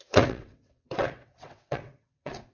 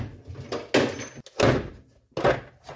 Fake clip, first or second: first